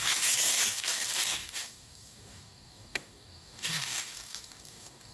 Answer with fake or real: fake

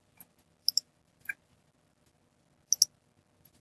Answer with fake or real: real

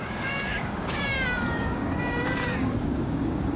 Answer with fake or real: fake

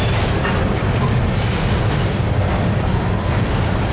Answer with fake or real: real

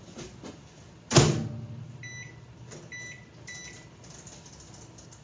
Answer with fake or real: real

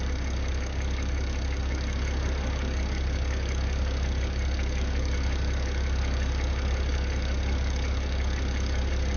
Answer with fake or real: fake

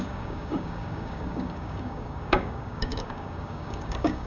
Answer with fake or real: fake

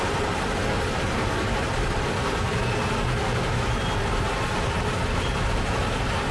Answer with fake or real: real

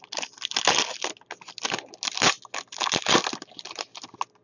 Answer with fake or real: real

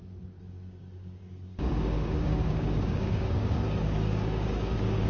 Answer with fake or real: fake